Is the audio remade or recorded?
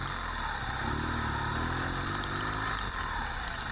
recorded